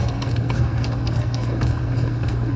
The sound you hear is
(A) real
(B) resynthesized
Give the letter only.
B